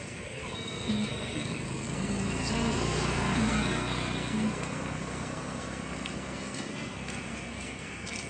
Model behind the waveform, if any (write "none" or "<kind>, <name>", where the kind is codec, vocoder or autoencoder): codec, SNAC